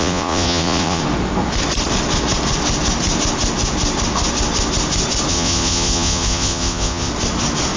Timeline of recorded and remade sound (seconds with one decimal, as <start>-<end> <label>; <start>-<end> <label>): 0.0-1.0 remade; 1.0-5.3 recorded; 5.3-7.1 remade; 7.1-7.8 recorded